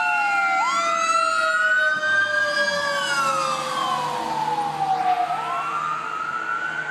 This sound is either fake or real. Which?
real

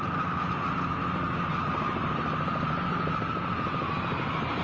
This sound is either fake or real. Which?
real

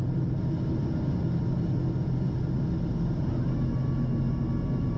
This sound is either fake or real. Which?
real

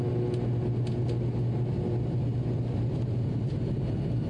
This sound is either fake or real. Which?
real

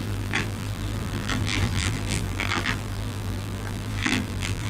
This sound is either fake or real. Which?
fake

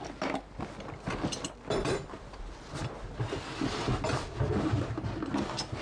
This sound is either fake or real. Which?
real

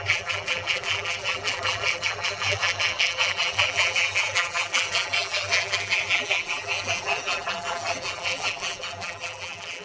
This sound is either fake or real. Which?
fake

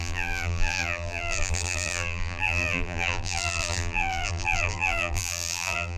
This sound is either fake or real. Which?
fake